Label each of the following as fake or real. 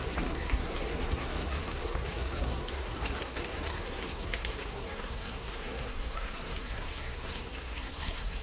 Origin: fake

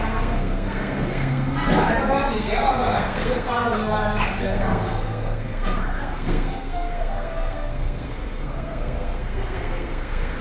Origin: fake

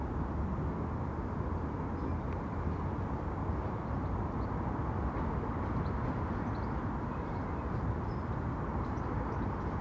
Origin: real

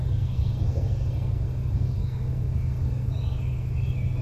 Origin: fake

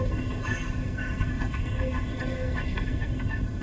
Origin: fake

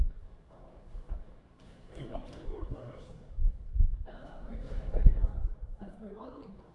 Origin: fake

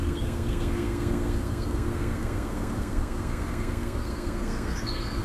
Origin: fake